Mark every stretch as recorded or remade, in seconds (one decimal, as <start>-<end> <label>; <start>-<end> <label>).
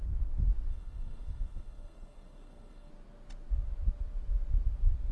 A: 0.0-0.7 recorded; 0.7-2.9 remade; 2.9-5.1 recorded